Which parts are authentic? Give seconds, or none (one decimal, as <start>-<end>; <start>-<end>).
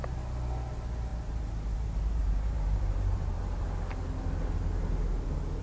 0.0-1.1; 3.4-5.6